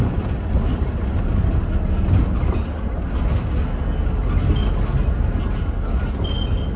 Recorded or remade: recorded